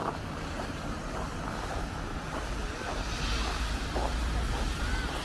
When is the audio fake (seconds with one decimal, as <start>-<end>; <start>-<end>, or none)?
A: none